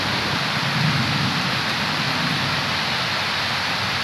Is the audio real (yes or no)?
yes